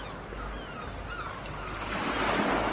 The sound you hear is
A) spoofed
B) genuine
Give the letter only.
B